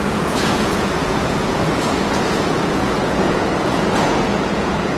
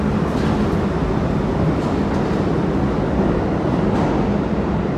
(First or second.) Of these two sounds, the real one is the second